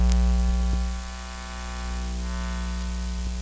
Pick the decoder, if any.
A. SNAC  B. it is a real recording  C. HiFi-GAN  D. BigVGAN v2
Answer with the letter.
B